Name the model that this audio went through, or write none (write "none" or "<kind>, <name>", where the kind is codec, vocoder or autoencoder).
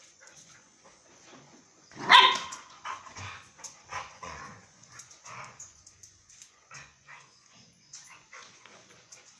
vocoder, Vocos